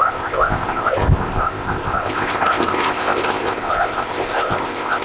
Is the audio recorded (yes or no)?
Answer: no